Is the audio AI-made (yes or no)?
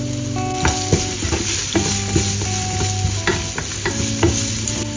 no